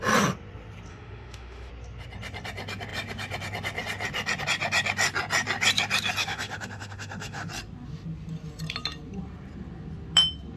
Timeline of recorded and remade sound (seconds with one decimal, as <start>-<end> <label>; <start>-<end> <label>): 0.0-0.9 recorded; 0.9-1.7 remade; 1.7-6.2 recorded; 6.2-7.5 remade; 7.5-10.6 recorded